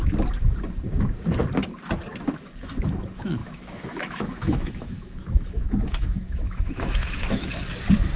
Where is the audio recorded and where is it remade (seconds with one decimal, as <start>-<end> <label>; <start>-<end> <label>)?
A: 0.0-3.4 recorded; 3.4-7.5 remade; 7.5-8.2 recorded

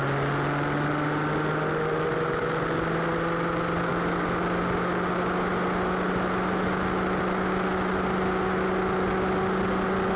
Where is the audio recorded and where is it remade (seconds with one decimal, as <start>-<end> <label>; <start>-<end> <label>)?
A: 0.0-10.2 recorded

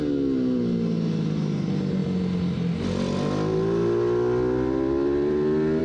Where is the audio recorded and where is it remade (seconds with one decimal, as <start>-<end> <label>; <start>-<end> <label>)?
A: 0.0-5.8 recorded

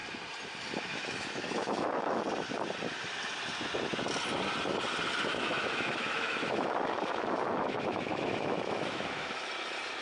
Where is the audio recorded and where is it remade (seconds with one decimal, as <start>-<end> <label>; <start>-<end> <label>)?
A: 0.0-0.9 recorded; 0.9-2.2 remade; 2.2-5.3 recorded; 5.3-9.5 remade; 9.5-10.0 recorded

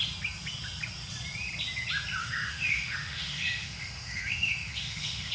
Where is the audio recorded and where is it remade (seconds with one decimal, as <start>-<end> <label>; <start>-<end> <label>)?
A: 0.0-2.2 recorded; 2.2-5.3 remade